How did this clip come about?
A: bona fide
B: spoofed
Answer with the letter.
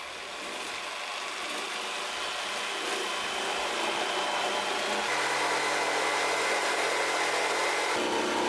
A